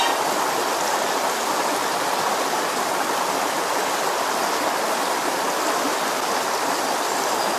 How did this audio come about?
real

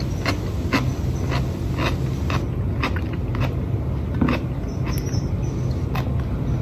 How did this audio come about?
real